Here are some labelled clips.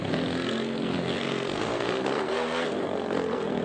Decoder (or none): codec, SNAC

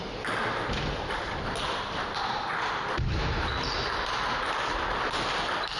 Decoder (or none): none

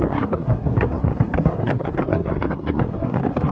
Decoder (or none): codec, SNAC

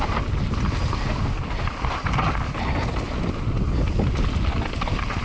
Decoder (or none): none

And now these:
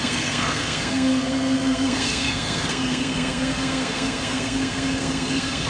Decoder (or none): codec, SNAC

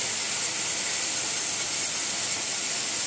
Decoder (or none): none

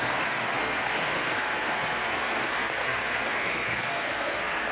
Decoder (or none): codec, SNAC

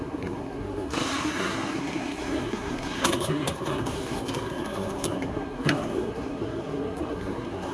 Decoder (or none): codec, SNAC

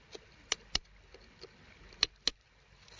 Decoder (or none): none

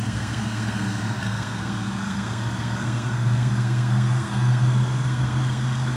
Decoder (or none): codec, SNAC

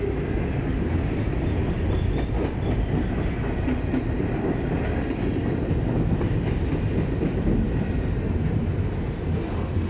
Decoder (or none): none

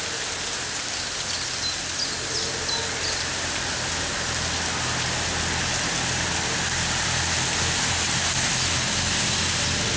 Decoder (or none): none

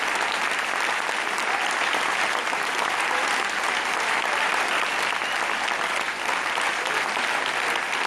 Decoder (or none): none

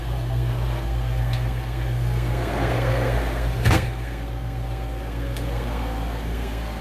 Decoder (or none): codec, SNAC